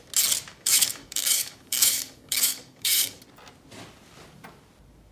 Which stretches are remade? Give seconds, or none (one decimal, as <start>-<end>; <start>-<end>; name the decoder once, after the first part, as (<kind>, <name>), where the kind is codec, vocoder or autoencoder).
0.5-3.2 (codec, DAC)